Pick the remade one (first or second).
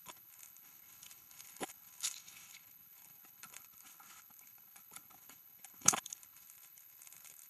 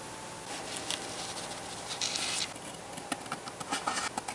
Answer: first